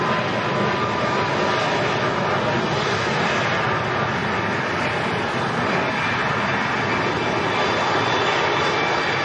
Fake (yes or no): no